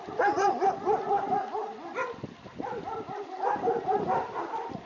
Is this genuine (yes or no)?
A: yes